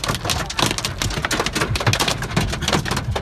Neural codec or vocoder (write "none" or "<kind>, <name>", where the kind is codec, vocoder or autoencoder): none